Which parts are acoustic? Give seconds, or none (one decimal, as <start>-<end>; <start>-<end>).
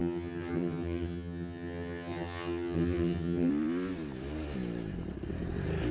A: 3.5-5.9